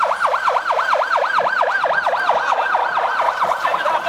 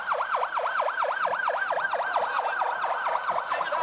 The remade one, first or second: first